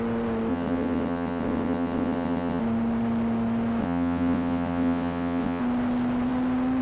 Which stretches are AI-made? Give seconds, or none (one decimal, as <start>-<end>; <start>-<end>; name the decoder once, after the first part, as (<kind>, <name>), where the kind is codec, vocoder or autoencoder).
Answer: 0.5-2.6 (vocoder, WaveNeXt); 3.8-5.6